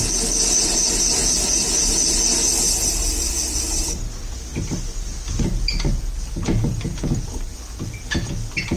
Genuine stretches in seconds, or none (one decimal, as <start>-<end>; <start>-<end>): 0.0-8.8